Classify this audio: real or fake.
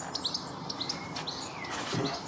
real